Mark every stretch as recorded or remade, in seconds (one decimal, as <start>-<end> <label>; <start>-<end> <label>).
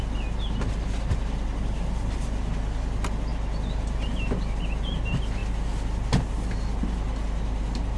0.0-8.0 recorded